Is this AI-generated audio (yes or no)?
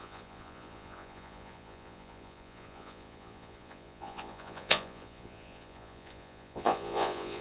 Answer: yes